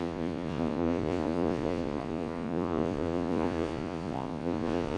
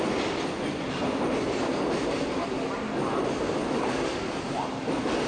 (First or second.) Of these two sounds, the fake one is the first